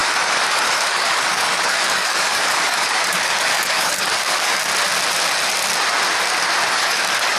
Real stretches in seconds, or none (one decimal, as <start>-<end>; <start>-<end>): 4.7-6.7